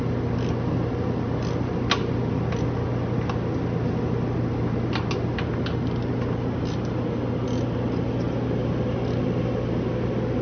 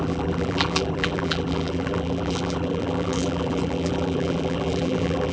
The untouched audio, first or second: first